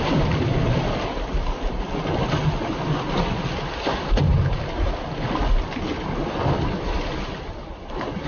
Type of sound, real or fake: real